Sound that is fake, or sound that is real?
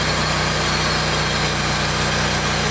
real